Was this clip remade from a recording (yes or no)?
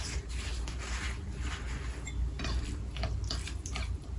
no